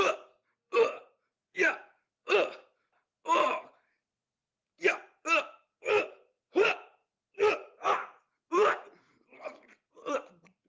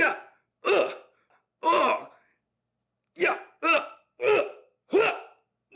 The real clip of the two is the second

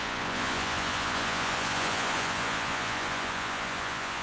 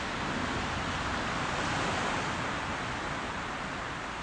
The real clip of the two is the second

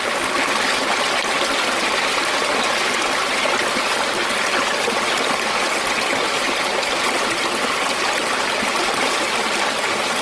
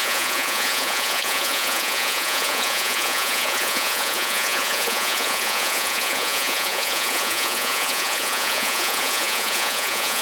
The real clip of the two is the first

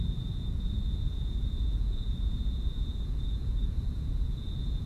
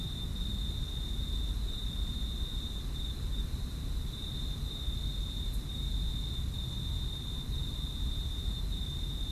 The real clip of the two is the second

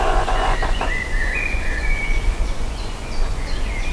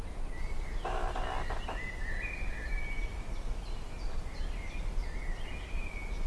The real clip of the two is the second